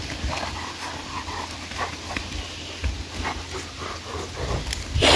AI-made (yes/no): no